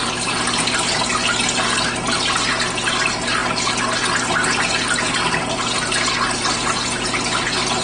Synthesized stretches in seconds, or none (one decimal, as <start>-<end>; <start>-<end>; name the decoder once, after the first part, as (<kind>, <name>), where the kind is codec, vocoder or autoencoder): none